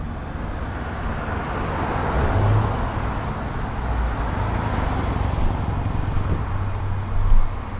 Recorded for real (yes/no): yes